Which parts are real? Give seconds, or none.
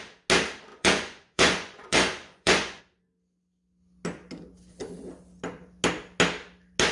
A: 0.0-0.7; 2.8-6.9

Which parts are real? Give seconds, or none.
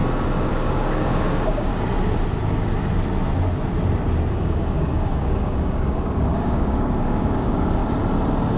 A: 0.0-0.5; 1.7-4.3; 7.8-8.6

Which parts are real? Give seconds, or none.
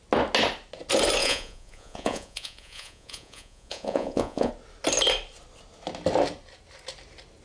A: 0.0-1.2; 4.5-7.4